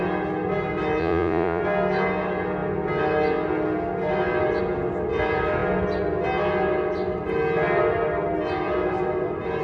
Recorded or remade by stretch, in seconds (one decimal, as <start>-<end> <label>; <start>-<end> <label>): 0.0-1.0 recorded; 1.0-1.6 remade; 1.6-9.6 recorded